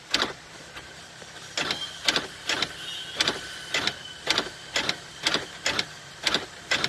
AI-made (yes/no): no